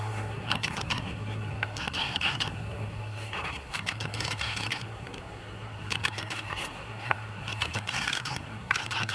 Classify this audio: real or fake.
fake